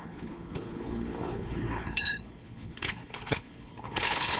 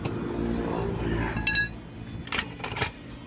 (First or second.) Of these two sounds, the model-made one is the first